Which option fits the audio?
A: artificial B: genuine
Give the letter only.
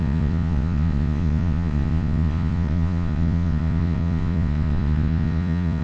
A